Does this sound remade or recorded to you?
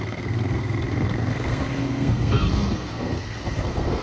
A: remade